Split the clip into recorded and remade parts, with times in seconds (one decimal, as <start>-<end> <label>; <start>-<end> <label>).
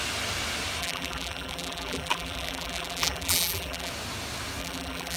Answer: 0.0-0.8 recorded; 0.8-3.9 remade; 3.9-4.6 recorded; 4.6-5.2 remade